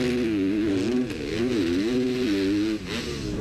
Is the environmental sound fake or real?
real